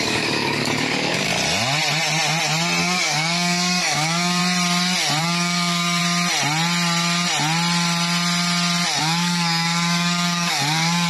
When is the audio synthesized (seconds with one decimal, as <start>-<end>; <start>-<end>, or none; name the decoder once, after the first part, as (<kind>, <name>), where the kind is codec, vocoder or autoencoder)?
0.0-1.3 (codec, DAC); 2.8-4.4; 5.2-6.0; 9.0-11.1